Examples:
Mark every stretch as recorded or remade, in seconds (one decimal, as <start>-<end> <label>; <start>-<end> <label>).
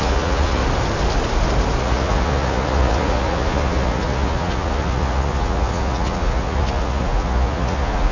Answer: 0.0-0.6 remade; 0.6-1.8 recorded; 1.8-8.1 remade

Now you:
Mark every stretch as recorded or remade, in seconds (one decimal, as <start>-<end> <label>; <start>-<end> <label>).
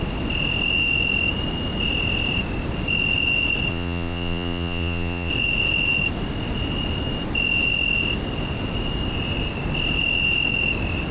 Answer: 0.0-3.7 recorded; 3.7-5.3 remade; 5.3-11.1 recorded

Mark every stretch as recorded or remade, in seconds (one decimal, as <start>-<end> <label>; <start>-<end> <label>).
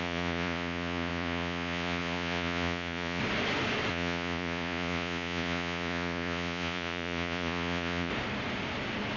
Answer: 0.0-3.2 remade; 3.2-3.9 recorded; 3.9-8.1 remade; 8.1-9.2 recorded